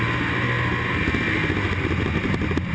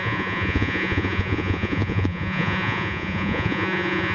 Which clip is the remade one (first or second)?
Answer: second